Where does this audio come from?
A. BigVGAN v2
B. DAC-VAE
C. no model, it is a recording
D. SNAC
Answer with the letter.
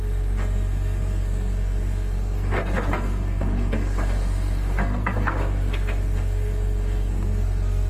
D